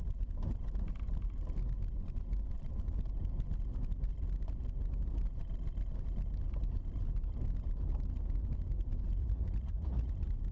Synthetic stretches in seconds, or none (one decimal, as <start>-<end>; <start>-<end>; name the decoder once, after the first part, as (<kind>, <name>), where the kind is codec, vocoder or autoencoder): 9.2-10.1 (vocoder, Vocos)